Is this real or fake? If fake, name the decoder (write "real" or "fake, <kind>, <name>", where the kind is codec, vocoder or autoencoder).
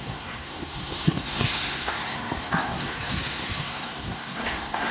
fake, codec, SNAC